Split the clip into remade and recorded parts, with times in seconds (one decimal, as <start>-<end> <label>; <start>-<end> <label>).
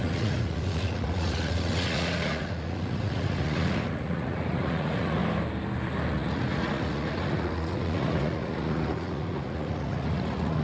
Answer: 0.0-5.2 remade; 5.2-6.1 recorded; 6.1-10.6 remade